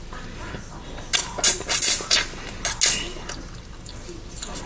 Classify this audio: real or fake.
real